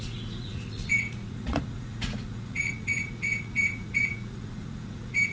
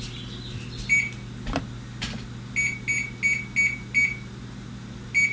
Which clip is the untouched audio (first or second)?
second